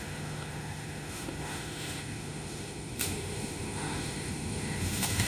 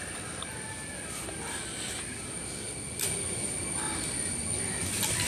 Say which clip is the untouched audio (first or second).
second